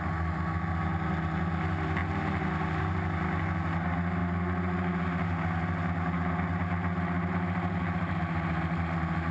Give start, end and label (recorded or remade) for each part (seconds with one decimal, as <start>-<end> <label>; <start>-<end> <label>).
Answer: 0.0-9.3 recorded

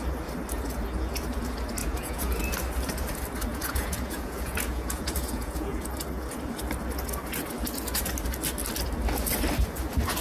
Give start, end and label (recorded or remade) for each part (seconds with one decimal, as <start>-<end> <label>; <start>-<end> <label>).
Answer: 0.0-1.8 recorded; 1.8-2.4 remade; 2.4-3.5 recorded; 3.5-5.8 remade; 5.8-10.2 recorded

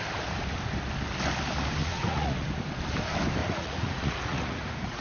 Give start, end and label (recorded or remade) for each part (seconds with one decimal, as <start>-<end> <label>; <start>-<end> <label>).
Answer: 0.0-1.8 recorded; 1.8-2.5 remade; 2.5-3.4 recorded; 3.4-5.0 remade

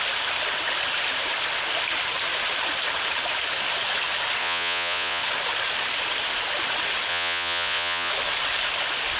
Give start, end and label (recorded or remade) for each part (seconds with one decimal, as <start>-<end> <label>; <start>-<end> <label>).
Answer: 0.0-4.4 recorded; 4.4-5.2 remade; 5.2-7.1 recorded; 7.1-8.1 remade; 8.1-9.2 recorded

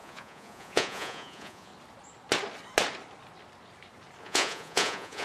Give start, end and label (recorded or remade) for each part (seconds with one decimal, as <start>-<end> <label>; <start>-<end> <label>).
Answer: 0.0-1.7 remade; 1.7-4.2 recorded; 4.2-5.2 remade

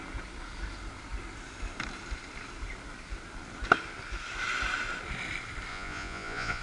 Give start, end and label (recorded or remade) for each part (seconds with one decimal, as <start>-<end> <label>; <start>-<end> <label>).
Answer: 0.0-5.7 recorded; 5.7-6.6 remade